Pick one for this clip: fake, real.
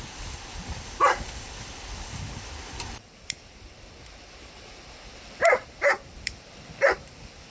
fake